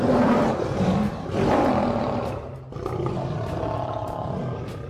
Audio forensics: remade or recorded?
recorded